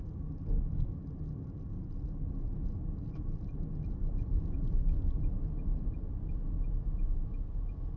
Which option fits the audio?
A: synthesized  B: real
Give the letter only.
B